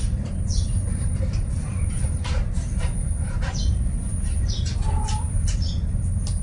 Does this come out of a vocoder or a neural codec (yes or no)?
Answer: yes